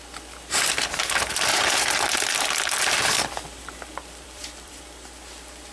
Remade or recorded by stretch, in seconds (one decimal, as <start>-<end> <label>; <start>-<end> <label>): 0.0-1.5 recorded; 1.5-4.8 remade; 4.8-5.7 recorded